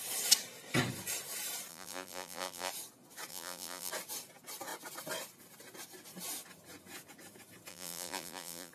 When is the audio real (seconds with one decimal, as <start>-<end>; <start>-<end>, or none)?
0.0-1.7; 2.7-3.3; 3.9-7.7